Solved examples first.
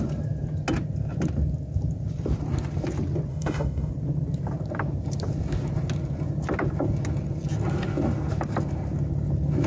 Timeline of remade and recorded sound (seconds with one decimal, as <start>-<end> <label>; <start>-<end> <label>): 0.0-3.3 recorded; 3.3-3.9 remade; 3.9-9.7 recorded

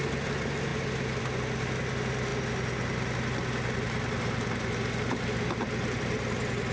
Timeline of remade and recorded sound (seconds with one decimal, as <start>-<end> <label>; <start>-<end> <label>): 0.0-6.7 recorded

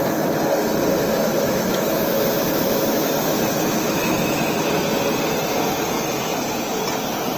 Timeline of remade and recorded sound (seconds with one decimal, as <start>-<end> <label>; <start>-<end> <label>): 0.0-1.1 recorded; 1.1-4.7 remade; 4.7-7.4 recorded